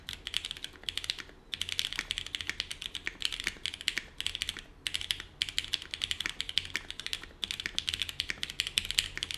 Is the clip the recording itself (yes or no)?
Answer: yes